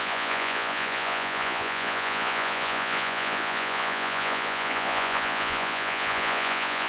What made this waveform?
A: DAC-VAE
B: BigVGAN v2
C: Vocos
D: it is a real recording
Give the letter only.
C